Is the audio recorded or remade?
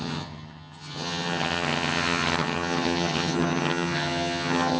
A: remade